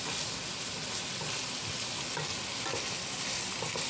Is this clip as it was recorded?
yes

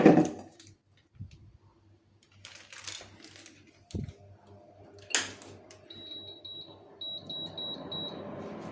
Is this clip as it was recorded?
yes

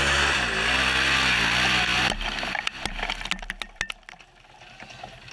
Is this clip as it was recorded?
yes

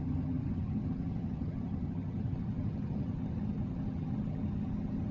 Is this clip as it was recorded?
no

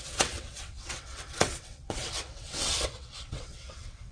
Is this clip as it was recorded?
no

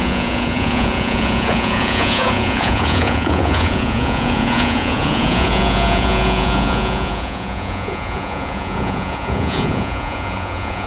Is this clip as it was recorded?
no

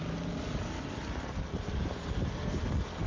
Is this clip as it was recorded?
yes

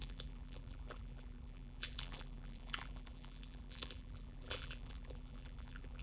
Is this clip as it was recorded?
no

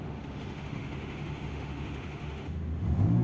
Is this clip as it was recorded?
no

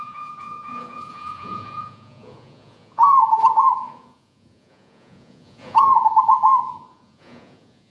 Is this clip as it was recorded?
no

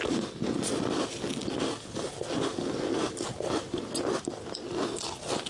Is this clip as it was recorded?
yes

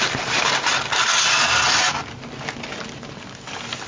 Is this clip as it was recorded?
yes